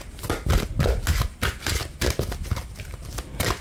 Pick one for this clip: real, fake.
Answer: real